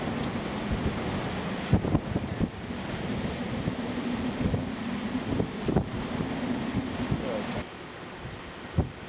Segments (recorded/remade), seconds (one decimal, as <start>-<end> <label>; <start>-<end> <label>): 0.0-9.1 recorded